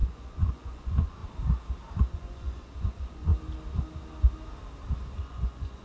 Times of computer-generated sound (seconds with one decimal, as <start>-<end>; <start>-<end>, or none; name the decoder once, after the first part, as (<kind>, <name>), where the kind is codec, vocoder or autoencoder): 0.0-1.2 (vocoder, Vocos); 2.1-3.3; 5.2-5.8